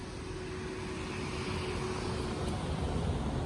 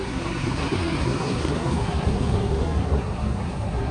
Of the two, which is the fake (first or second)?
second